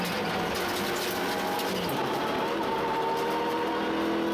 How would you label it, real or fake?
real